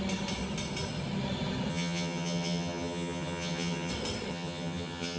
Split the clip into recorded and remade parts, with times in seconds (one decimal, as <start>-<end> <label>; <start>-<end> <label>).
0.0-1.7 recorded; 1.7-3.9 remade; 3.9-4.3 recorded; 4.3-5.2 remade